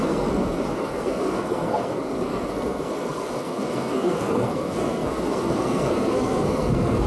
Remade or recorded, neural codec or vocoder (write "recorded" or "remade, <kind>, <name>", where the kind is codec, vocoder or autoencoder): remade, codec, SNAC